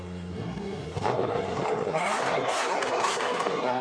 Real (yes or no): no